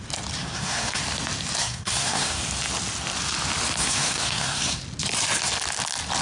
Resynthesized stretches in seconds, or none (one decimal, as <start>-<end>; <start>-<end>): 0.4-1.0; 1.6-2.4; 3.8-4.8